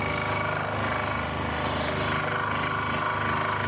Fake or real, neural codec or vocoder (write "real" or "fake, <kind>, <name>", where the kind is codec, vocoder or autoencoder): real